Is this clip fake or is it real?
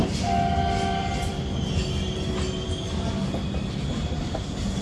real